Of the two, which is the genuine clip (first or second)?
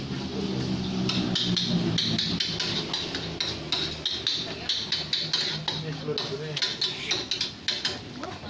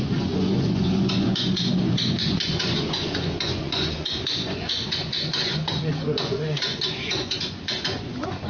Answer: first